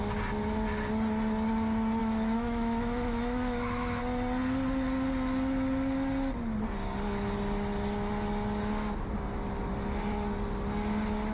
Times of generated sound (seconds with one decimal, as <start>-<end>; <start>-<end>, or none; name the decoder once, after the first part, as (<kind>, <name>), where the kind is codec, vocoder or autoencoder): 2.0-4.0 (autoencoder, DAC-VAE)